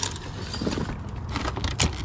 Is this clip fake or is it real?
real